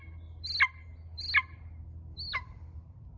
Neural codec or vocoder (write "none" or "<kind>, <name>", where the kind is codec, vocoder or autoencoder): none